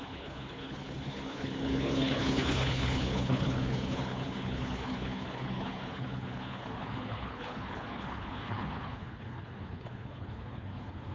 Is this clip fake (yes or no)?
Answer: yes